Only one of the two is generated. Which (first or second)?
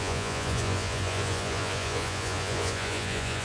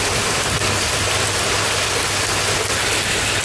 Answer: first